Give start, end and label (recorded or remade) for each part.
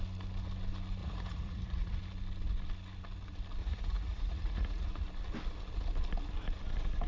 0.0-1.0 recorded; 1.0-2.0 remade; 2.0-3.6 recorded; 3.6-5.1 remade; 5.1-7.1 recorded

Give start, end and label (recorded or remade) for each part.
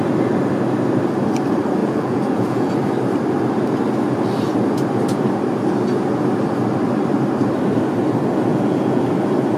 0.0-1.8 recorded; 1.8-2.7 remade; 2.7-8.5 recorded; 8.5-9.0 remade; 9.0-9.6 recorded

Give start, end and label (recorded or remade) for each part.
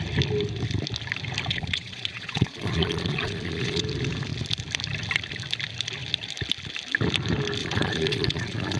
0.0-1.5 recorded; 1.5-3.8 remade; 3.8-7.6 recorded; 7.6-8.8 remade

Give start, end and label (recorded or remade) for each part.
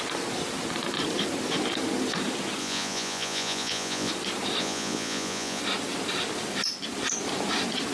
0.0-2.6 recorded; 2.6-4.1 remade; 4.1-4.6 recorded; 4.6-5.6 remade; 5.6-7.9 recorded